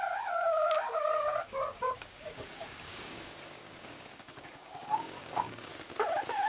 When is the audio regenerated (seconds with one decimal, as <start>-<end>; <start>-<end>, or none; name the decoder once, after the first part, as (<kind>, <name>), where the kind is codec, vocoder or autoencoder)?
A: 0.0-5.7 (codec, DAC)